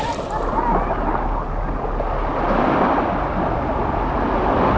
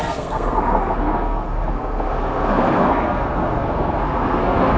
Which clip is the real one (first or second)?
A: first